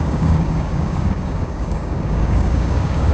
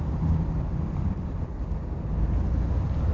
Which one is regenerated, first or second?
first